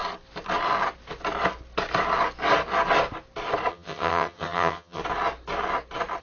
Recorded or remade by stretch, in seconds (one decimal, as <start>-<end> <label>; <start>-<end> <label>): 0.0-3.7 recorded; 3.7-5.0 remade; 5.0-6.2 recorded